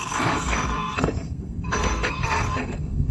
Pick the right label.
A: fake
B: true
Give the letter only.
A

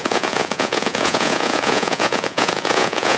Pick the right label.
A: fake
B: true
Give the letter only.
A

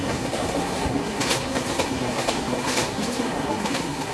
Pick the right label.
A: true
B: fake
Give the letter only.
B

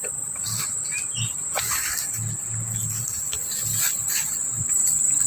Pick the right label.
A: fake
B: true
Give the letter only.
B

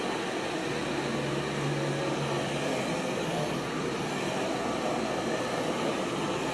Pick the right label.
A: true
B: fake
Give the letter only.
A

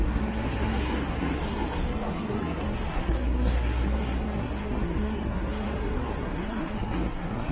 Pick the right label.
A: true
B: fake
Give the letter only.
B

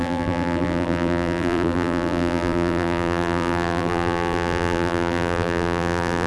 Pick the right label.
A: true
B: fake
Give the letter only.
B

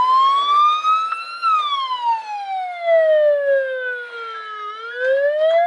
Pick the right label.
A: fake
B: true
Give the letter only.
B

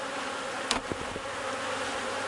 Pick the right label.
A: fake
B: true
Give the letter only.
B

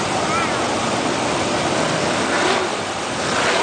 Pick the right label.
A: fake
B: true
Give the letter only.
A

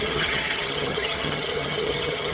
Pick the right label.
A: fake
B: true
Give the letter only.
A